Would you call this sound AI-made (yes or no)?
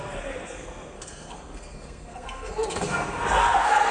yes